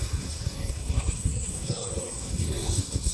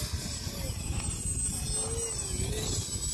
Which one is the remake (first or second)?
first